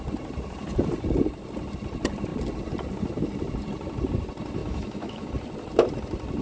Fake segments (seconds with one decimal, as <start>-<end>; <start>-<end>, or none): 4.6-5.3